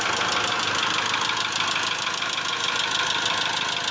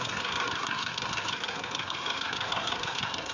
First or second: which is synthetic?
second